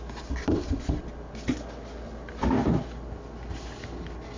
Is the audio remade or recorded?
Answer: recorded